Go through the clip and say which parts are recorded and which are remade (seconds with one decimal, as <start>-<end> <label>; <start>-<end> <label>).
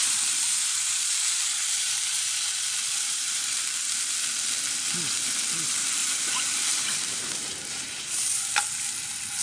0.0-3.5 remade; 3.5-6.0 recorded; 6.0-8.5 remade; 8.5-9.4 recorded